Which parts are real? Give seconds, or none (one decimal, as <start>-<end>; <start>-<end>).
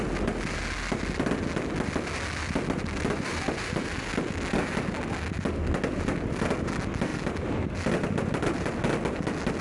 0.0-9.6